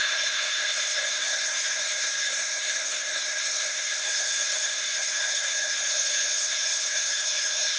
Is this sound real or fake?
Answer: fake